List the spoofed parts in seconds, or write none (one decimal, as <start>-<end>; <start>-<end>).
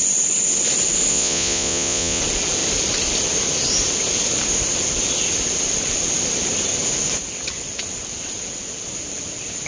1.1-2.2